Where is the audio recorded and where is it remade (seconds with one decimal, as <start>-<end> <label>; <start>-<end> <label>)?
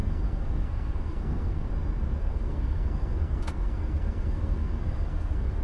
0.0-1.7 remade; 1.7-2.2 recorded; 2.2-5.6 remade